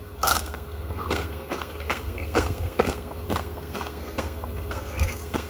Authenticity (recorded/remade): remade